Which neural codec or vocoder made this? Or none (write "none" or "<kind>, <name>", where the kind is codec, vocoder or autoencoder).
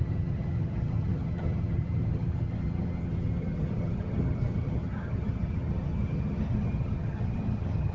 vocoder, HiFi-GAN